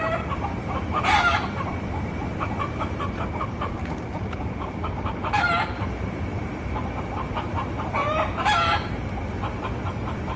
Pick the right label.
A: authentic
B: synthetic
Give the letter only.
B